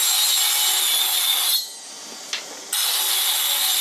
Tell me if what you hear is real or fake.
real